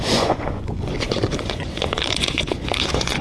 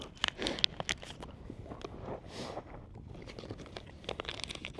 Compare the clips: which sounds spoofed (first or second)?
first